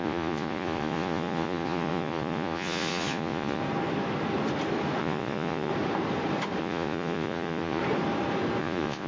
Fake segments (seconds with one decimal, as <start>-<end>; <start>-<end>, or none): 0.0-3.6; 5.0-5.7; 6.6-7.8; 8.6-9.1